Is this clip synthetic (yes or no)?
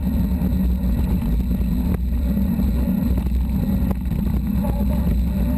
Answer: no